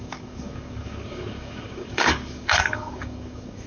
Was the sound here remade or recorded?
remade